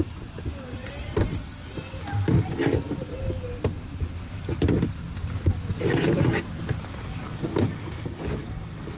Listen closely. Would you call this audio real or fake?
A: real